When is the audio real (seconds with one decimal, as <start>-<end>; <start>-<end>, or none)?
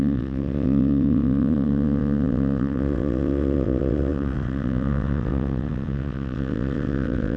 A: none